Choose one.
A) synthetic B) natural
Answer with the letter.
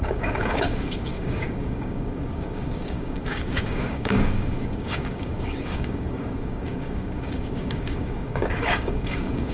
A